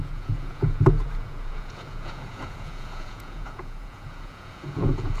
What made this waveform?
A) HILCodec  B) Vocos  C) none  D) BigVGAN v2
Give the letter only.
B